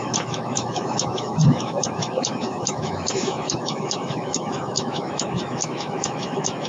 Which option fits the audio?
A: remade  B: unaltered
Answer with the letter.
A